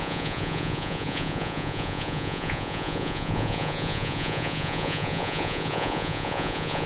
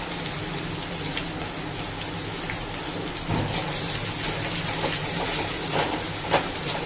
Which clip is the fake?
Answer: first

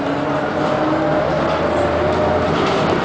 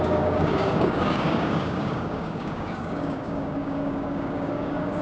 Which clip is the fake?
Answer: second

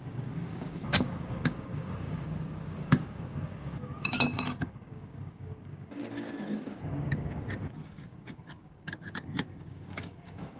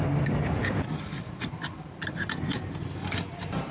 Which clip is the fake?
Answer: first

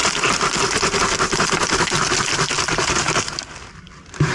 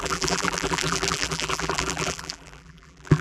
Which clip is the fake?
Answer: second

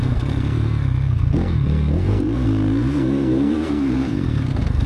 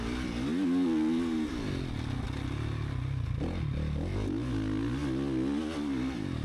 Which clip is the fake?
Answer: first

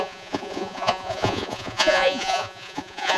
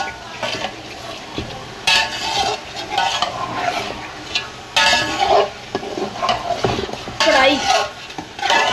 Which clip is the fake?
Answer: first